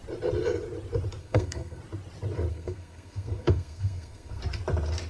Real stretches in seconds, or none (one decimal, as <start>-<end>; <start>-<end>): 0.0-1.2; 1.8-2.5; 4.4-5.1